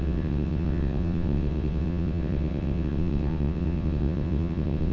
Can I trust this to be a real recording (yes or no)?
no